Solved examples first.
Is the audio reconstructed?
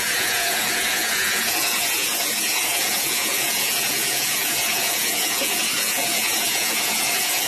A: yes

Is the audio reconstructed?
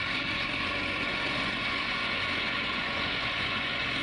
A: yes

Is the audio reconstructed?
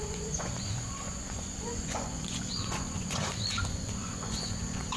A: yes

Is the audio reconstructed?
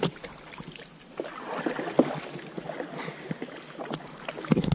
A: no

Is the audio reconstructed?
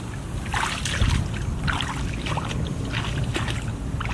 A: no